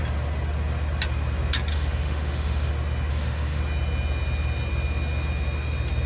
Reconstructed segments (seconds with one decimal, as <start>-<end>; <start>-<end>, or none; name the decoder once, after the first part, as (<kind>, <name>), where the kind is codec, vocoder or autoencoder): 1.7-2.7 (autoencoder, DAC-VAE); 3.1-3.6